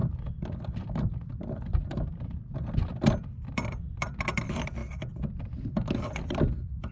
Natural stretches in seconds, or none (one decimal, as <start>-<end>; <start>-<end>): 4.8-5.4